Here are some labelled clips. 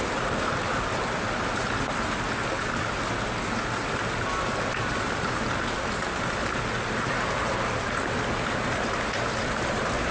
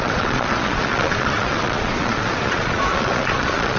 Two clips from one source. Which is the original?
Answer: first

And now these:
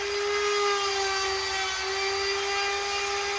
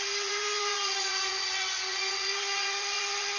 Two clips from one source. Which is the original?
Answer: first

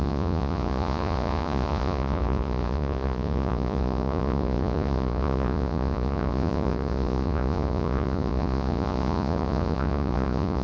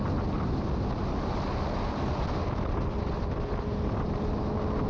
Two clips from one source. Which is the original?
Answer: second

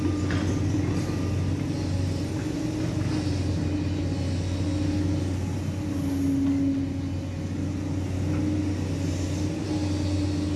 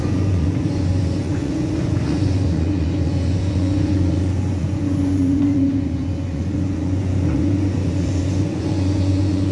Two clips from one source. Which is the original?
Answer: first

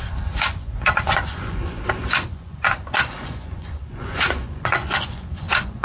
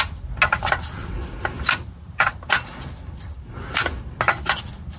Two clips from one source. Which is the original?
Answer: second